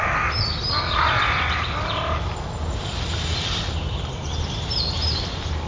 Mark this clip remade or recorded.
recorded